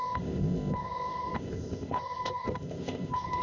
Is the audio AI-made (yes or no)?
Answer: yes